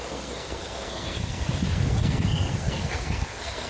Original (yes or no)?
no